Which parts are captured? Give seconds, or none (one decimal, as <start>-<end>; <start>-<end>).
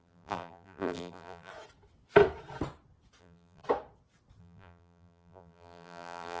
1.5-3.2; 3.6-4.4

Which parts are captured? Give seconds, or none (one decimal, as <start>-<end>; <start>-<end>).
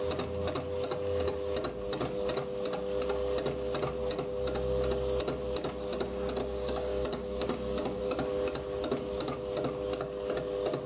0.0-6.4; 8.0-10.9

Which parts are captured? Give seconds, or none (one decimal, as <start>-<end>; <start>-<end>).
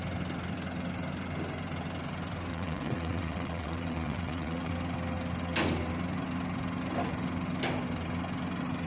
0.0-2.5; 4.7-8.9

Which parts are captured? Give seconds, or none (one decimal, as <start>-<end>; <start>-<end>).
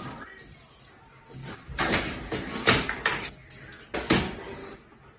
0.0-5.2